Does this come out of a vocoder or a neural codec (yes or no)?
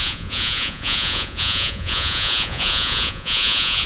yes